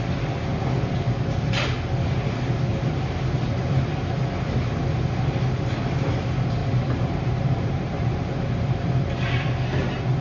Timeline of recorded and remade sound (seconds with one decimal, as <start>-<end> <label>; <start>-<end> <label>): 0.0-2.7 recorded; 2.7-3.8 remade; 3.8-6.6 recorded; 6.6-8.9 remade; 8.9-10.2 recorded